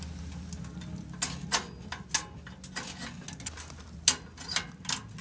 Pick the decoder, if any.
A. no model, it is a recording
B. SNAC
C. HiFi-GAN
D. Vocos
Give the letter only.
A